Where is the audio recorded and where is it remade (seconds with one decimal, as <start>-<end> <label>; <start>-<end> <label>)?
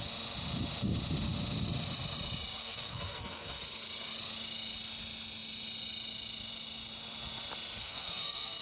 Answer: 0.0-2.6 recorded; 2.6-3.6 remade; 3.6-7.8 recorded; 7.8-8.6 remade